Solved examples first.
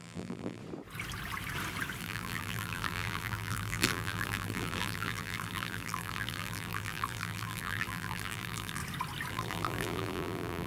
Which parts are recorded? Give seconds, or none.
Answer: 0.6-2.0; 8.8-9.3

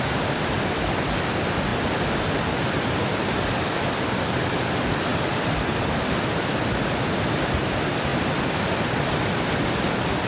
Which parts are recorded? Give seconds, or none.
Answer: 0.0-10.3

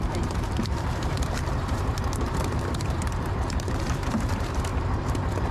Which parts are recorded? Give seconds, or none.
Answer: 4.7-5.5

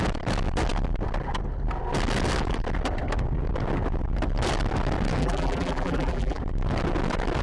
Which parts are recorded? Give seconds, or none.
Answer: 0.0-5.2; 6.4-7.4

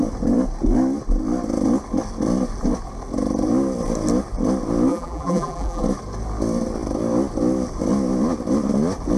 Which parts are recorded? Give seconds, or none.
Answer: 0.0-4.9; 5.8-9.2

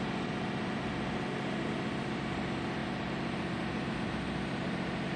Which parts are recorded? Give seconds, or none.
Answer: 0.0-2.8; 3.6-5.2